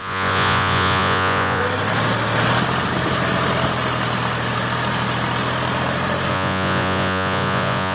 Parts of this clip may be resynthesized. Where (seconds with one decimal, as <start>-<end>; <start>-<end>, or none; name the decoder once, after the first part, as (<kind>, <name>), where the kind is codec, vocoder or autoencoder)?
0.0-1.6 (vocoder, Vocos); 6.3-7.9